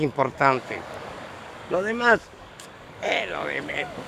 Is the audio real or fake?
fake